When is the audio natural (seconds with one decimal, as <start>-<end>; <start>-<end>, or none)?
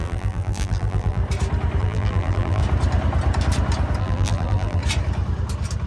1.2-1.8; 2.6-4.0; 4.8-5.9